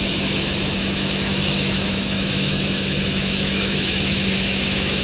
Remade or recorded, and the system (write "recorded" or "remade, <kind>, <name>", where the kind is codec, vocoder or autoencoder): remade, autoencoder, DAC-VAE